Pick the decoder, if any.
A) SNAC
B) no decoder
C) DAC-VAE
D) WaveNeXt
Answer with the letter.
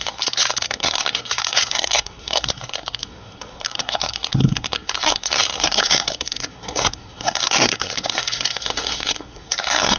A